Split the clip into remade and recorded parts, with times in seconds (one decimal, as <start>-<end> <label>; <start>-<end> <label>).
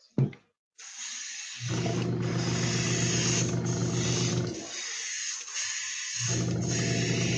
0.0-7.4 recorded